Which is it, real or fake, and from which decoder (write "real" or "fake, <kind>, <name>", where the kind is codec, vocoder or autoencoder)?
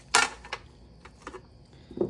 real